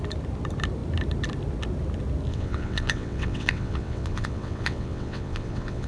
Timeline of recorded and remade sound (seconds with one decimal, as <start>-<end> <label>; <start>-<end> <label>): 0.0-2.3 recorded; 2.3-5.9 remade